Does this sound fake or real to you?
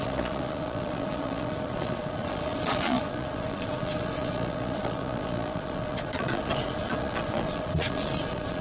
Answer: fake